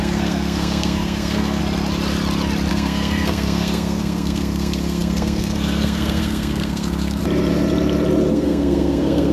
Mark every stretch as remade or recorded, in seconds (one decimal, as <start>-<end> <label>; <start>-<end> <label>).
0.0-1.6 remade; 1.6-2.7 recorded; 2.7-7.2 remade; 7.2-8.3 recorded; 8.3-9.3 remade